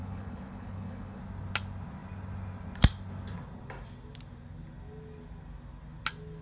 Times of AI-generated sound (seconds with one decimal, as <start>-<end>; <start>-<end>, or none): 0.0-1.2